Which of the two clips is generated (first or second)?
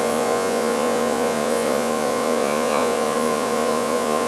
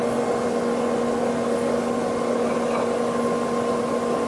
first